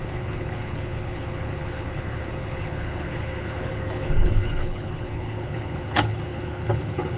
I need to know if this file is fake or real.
fake